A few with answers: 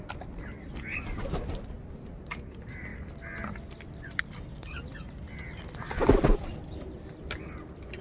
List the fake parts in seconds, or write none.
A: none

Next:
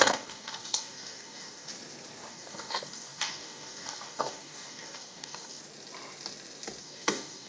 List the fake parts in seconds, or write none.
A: 0.0-1.7 (codec, DAC); 2.3-5.6; 6.8-7.5

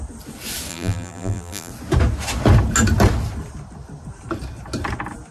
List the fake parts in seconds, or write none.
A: 0.7-1.7 (vocoder, BigVGAN v2)